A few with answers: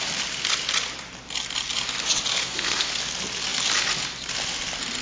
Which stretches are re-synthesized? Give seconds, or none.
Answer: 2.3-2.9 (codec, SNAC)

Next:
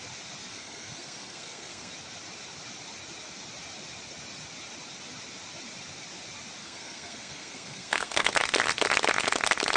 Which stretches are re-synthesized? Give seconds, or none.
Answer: 0.5-1.9 (codec, SNAC); 6.6-8.3